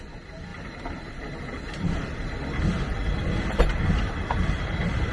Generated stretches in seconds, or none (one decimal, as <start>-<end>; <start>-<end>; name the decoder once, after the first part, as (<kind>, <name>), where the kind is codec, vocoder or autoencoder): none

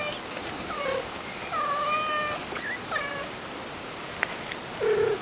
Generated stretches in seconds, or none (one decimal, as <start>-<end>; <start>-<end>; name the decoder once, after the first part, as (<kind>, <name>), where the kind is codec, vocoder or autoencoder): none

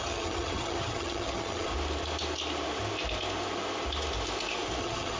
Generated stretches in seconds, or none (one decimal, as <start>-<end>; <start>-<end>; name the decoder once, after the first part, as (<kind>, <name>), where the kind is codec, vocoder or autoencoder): 0.0-1.7 (vocoder, HiFi-GAN); 4.8-5.2

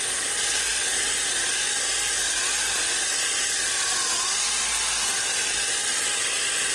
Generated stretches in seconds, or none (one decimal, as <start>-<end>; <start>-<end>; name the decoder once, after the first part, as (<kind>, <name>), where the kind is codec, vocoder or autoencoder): 5.8-6.7 (vocoder, BigVGAN v2)

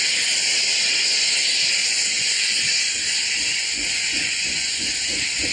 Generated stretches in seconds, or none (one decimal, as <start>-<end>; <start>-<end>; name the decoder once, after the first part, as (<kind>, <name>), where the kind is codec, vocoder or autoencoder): 1.8-2.4 (vocoder, Vocos); 3.5-4.9

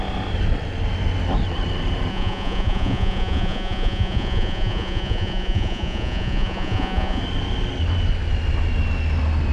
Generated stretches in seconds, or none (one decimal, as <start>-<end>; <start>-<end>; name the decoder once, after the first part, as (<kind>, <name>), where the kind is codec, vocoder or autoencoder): 2.1-7.2 (vocoder, Vocos)